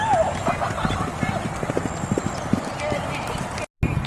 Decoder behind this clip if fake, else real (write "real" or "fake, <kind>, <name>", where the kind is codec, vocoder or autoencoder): real